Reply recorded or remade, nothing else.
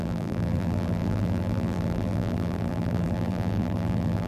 remade